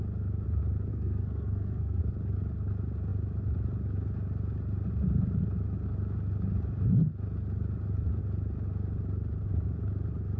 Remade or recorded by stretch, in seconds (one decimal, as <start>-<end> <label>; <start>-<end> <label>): 0.0-0.9 recorded; 0.9-2.0 remade; 2.0-10.4 recorded